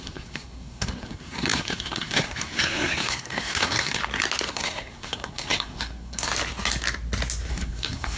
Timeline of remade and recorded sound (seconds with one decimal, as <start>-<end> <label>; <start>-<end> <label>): 0.0-4.0 remade; 4.0-4.5 recorded; 4.5-6.3 remade; 6.3-7.5 recorded; 7.5-8.2 remade

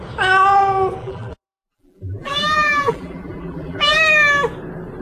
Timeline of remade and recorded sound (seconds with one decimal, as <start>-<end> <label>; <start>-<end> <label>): 0.0-1.0 recorded; 1.0-4.0 remade; 4.0-5.0 recorded

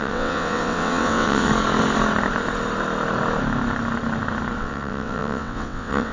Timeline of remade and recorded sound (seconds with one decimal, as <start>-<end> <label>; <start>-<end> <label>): 0.0-1.5 remade; 1.5-4.6 recorded; 4.6-6.1 remade

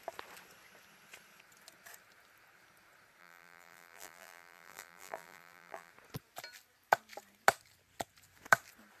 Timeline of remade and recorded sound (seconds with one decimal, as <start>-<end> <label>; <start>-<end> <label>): 0.0-3.2 recorded; 3.2-5.9 remade; 5.9-9.0 recorded

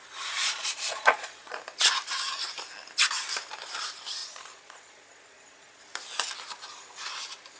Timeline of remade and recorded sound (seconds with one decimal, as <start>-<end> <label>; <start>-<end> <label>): 0.0-0.4 recorded; 0.4-1.6 remade; 1.6-4.2 recorded; 4.2-5.8 remade; 5.8-7.6 recorded

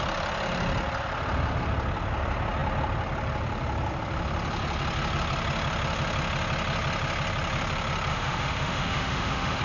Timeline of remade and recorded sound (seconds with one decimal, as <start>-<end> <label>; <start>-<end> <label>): 0.0-8.1 recorded; 8.1-9.6 remade

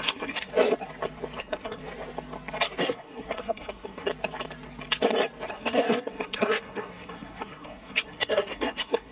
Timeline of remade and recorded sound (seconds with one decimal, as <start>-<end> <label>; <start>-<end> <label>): 0.0-0.5 remade; 0.5-1.4 recorded; 1.4-1.8 remade; 1.8-2.8 recorded; 2.8-4.1 remade; 4.1-5.5 recorded; 5.5-9.1 remade